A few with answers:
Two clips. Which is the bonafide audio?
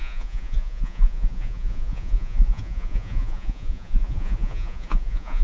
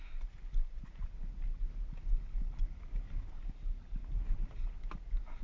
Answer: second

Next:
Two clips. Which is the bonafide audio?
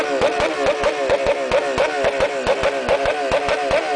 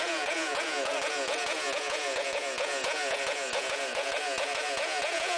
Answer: first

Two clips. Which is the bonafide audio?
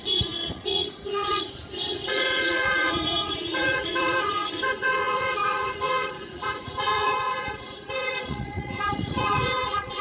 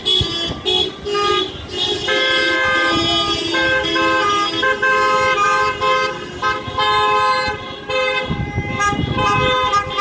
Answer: second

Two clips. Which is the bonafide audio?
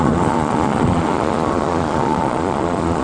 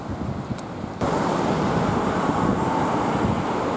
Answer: second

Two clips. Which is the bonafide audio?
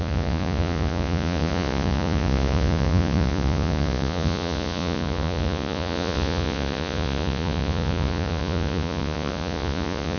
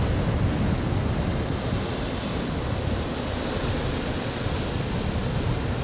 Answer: second